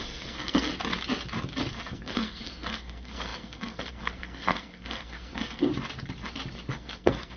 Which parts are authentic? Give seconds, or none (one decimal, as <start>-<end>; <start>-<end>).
0.7-1.7; 5.7-6.7